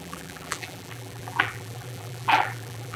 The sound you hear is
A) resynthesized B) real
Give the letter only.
A